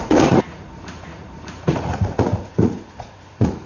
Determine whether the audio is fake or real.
fake